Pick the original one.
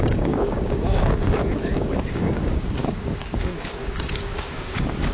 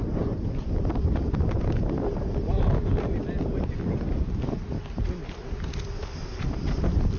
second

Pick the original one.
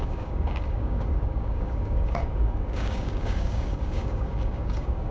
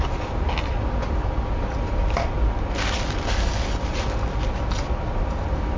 second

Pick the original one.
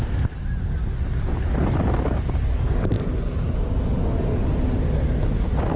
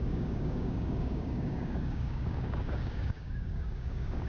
first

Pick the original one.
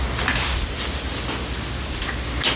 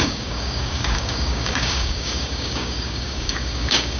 first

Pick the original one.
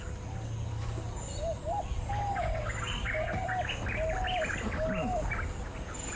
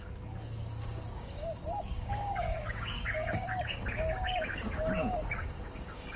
first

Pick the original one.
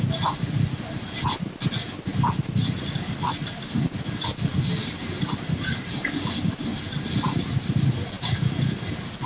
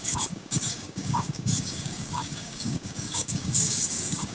first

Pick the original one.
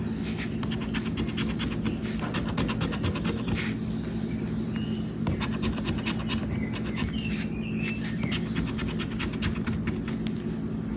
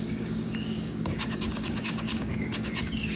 first